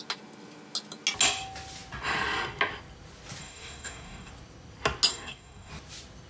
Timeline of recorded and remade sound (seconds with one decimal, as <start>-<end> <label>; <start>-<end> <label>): 0.0-3.4 recorded; 3.4-4.3 remade; 4.3-5.1 recorded; 5.1-5.7 remade; 5.7-6.3 recorded